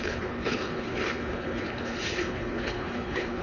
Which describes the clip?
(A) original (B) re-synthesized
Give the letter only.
B